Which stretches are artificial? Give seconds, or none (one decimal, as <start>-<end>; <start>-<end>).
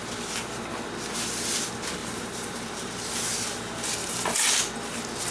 2.0-3.2; 4.0-4.6